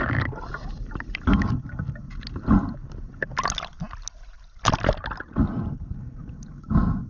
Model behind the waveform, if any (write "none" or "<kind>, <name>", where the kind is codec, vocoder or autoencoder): none